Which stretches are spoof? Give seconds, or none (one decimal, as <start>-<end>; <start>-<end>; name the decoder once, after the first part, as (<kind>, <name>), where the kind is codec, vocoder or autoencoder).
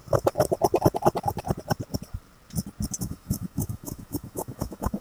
3.0-5.0 (autoencoder, DAC-VAE)